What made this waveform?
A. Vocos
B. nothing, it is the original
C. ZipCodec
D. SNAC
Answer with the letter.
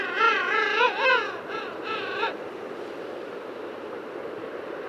B